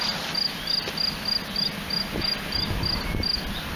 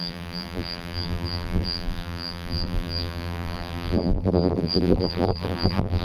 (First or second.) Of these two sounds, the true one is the first